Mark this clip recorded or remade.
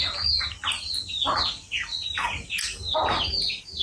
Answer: recorded